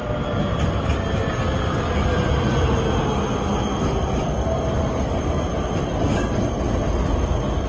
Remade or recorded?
recorded